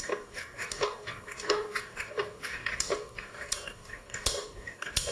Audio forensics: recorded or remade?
remade